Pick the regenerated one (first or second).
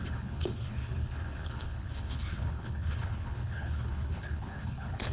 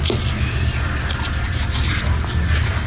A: first